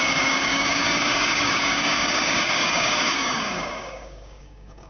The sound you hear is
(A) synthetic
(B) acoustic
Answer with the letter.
A